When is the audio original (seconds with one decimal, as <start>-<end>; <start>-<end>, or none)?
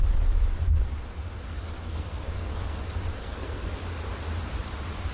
0.0-1.4; 2.8-3.2; 3.7-5.1